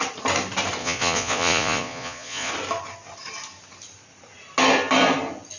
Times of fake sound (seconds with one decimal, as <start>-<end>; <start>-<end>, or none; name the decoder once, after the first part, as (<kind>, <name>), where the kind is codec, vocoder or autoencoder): 0.8-2.5 (vocoder, Vocos)